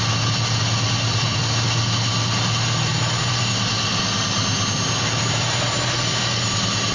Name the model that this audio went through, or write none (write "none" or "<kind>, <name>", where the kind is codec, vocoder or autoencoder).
none